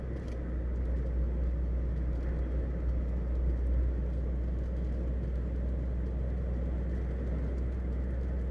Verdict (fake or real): real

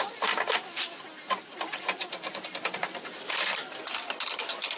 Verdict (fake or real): real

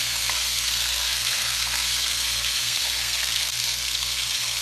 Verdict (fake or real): fake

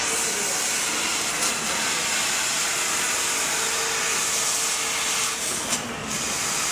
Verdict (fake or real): real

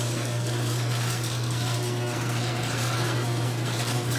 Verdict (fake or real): fake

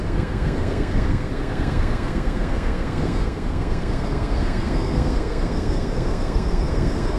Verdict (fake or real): fake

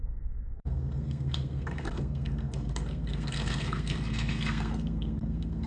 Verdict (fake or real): fake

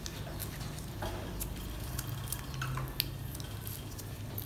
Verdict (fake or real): real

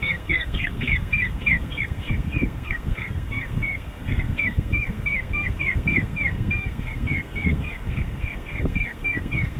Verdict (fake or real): fake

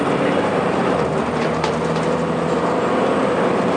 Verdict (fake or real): real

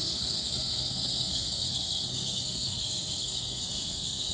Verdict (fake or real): fake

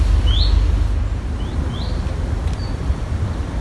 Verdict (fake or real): real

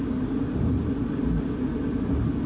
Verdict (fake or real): real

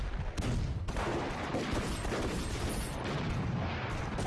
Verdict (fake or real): real